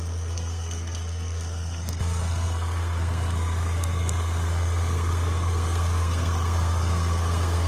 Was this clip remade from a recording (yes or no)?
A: yes